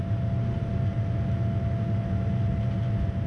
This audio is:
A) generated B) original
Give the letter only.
B